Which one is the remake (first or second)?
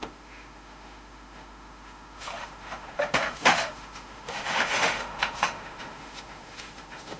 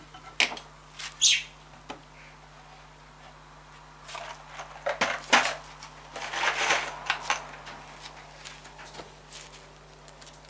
first